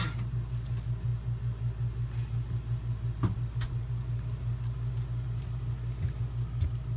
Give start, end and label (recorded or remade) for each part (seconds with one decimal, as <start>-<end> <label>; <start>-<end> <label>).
0.0-7.0 recorded

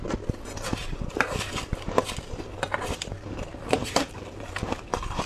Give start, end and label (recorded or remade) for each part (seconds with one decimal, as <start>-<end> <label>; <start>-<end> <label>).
0.0-0.8 recorded; 0.8-1.5 remade; 1.5-3.5 recorded; 3.5-5.3 remade